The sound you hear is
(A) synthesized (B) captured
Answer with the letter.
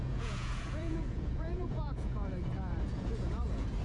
A